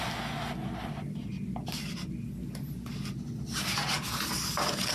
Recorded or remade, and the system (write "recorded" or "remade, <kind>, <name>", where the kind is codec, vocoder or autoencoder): recorded